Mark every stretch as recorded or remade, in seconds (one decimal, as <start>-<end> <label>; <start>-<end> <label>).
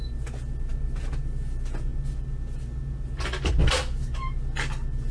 0.0-5.1 recorded